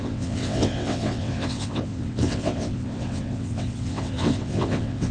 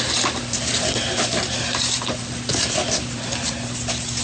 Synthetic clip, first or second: first